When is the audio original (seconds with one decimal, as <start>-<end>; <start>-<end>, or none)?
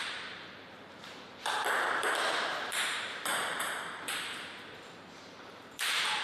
none